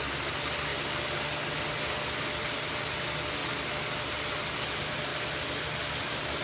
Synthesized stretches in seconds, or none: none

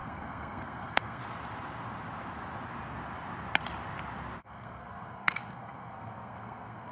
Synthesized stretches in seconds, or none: 0.0-1.2; 4.4-6.9

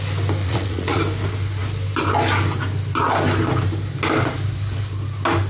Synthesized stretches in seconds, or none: 0.4-1.0

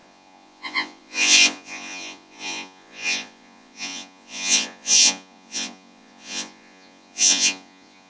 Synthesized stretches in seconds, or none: 0.0-8.1

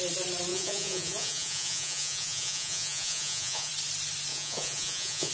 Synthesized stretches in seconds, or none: 0.5-3.7; 4.3-5.3

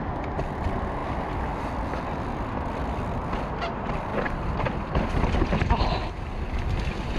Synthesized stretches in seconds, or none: 4.1-6.4

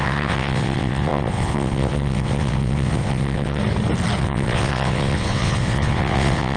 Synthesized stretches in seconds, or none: 0.0-3.6; 4.2-6.6

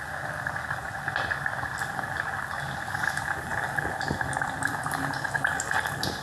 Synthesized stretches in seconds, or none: none